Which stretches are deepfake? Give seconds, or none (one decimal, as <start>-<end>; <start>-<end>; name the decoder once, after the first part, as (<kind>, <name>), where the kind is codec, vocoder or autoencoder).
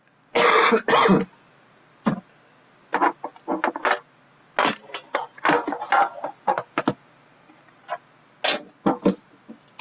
none